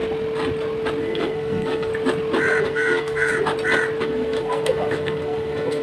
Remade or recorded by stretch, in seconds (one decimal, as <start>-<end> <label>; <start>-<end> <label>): 0.0-1.0 recorded; 1.0-1.9 remade; 1.9-2.6 recorded; 2.6-3.3 remade; 3.3-4.0 recorded; 4.0-5.8 remade